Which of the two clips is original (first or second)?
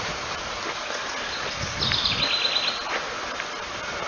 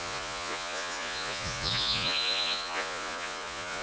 first